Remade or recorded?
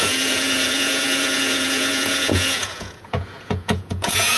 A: remade